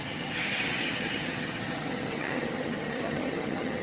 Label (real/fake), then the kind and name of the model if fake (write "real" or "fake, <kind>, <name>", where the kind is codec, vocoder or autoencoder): fake, vocoder, HiFi-GAN